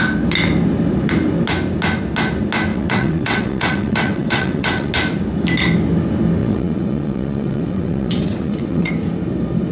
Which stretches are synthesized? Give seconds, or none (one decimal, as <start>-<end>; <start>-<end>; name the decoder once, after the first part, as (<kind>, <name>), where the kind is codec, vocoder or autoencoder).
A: 2.7-4.9 (vocoder, WaveNeXt); 6.4-8.9